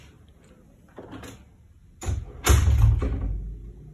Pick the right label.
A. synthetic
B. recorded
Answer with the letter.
B